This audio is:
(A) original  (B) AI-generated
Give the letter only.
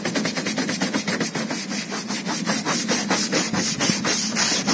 A